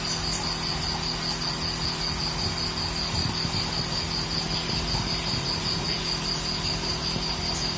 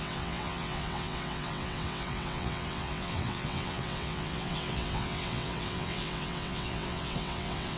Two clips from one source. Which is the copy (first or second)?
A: second